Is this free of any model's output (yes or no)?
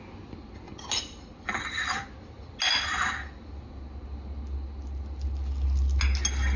yes